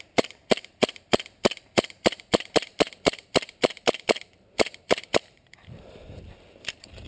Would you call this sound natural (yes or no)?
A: no